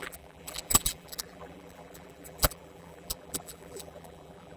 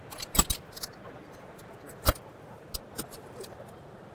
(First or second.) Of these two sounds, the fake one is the first